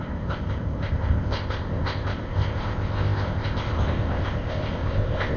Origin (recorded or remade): remade